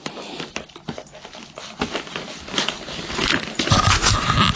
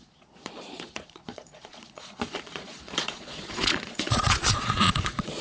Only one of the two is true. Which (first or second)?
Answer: first